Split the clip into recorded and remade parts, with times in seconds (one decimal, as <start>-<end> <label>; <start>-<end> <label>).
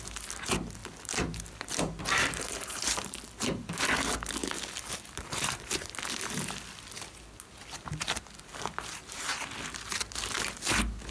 0.0-0.8 recorded; 0.8-3.7 remade; 3.7-11.1 recorded